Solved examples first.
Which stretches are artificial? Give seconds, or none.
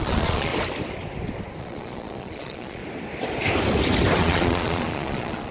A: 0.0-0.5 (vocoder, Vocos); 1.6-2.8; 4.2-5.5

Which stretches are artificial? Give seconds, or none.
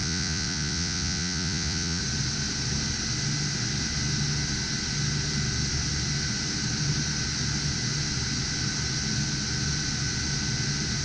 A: 0.0-2.0 (vocoder, Vocos)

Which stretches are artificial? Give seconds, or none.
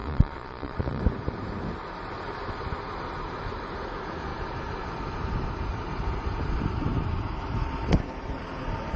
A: 0.0-1.0 (vocoder, Vocos)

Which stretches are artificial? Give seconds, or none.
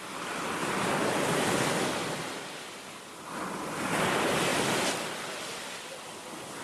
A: none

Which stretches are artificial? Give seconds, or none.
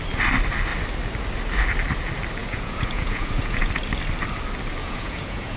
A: 2.4-3.7 (vocoder, Vocos); 4.8-5.6